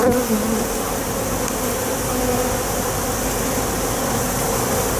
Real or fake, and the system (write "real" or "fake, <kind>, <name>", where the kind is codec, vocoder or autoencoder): real